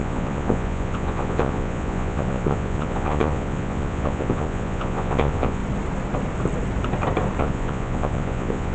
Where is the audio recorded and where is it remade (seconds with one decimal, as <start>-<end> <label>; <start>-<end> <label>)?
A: 0.0-5.6 remade; 5.6-7.4 recorded; 7.4-8.7 remade